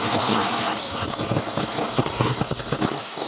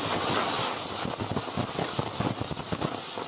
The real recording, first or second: second